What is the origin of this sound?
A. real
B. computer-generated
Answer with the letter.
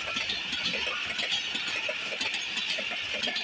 A